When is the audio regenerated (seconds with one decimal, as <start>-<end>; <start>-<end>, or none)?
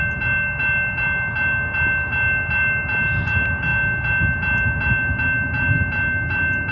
none